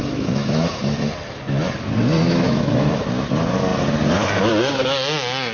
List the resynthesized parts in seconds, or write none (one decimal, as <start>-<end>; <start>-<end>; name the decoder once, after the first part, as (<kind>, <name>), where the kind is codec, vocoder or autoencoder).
0.0-0.8 (autoencoder, DAC-VAE); 2.3-3.0